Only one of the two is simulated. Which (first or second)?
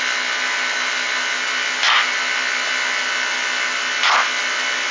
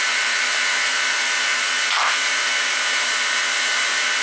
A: second